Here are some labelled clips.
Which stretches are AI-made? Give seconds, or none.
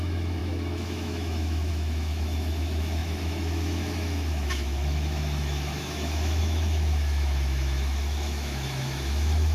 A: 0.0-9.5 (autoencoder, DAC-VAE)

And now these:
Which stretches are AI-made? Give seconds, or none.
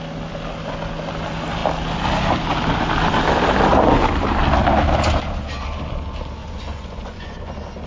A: 6.4-7.5 (vocoder, Vocos)